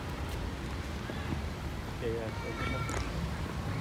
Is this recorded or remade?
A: recorded